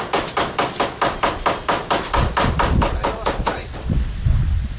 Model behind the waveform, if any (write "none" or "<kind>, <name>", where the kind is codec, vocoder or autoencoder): none